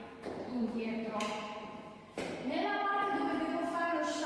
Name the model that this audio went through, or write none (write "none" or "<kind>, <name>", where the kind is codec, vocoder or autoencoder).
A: none